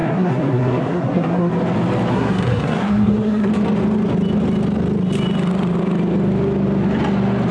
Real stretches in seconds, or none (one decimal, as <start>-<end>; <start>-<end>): 1.5-2.1; 3.5-7.5